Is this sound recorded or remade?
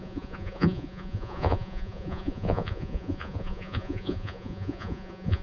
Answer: remade